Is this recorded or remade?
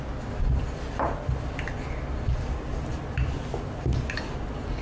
recorded